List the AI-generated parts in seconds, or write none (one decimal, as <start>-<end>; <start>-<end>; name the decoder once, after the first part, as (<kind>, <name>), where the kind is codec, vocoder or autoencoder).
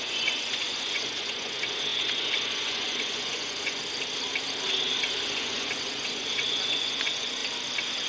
0.0-3.8 (vocoder, Vocos); 5.2-7.4